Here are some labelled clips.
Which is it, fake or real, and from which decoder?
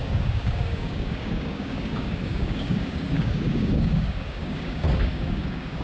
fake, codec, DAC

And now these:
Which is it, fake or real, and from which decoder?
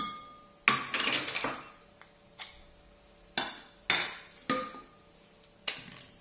real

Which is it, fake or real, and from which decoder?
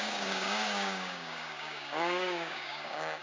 fake, codec, DAC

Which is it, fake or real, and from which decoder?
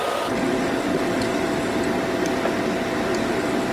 real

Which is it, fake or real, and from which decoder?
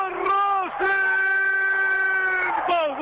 real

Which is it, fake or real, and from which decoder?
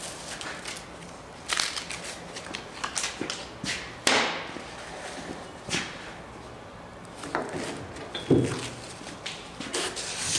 real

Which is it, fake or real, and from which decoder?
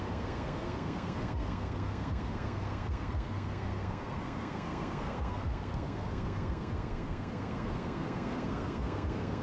fake, codec, SNAC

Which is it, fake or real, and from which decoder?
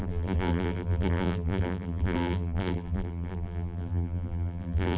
fake, vocoder, BigVGAN v2